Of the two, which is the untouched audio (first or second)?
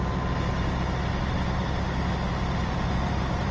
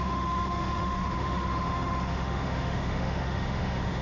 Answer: first